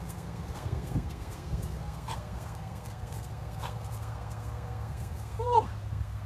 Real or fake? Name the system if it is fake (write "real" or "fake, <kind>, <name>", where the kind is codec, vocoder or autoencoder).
fake, codec, SNAC